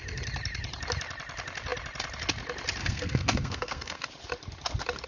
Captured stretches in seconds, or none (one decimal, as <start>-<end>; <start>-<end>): 0.0-2.8; 4.0-5.1